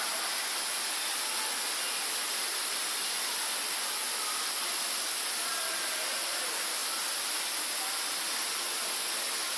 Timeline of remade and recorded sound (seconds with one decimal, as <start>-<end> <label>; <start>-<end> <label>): 0.0-9.6 recorded